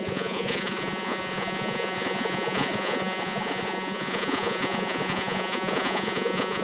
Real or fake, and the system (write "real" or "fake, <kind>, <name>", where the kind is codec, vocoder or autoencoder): fake, vocoder, Vocos